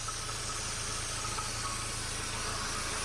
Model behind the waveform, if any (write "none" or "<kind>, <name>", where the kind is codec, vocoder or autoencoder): none